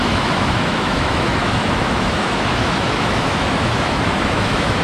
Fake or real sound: fake